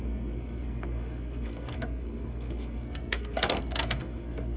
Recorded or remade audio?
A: remade